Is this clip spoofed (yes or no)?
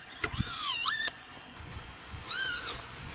yes